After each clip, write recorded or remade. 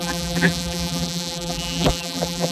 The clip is remade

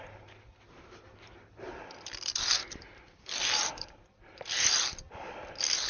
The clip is remade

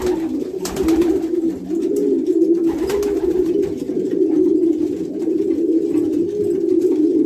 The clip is recorded